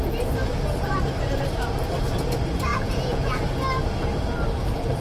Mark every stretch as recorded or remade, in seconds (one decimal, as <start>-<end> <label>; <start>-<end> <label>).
0.0-2.7 recorded; 2.7-3.4 remade; 3.4-5.0 recorded